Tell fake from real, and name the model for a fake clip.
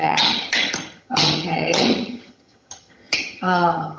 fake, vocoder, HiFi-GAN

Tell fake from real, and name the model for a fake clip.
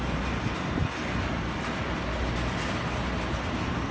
real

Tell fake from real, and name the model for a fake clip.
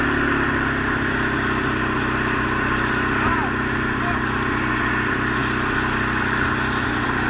real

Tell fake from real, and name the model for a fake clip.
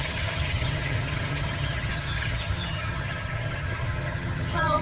fake, vocoder, HiFi-GAN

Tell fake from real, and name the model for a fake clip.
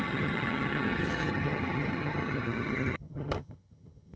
fake, vocoder, HiFi-GAN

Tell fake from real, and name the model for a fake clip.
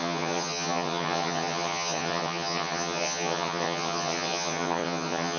fake, vocoder, HiFi-GAN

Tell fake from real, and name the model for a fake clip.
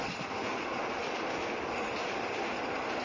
real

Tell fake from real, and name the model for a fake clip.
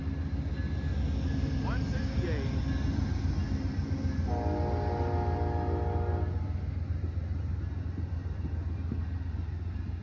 real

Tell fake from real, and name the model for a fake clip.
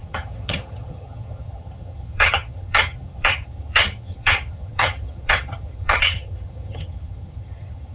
fake, vocoder, HiFi-GAN